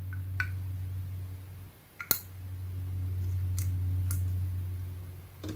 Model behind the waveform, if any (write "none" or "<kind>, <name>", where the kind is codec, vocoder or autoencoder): none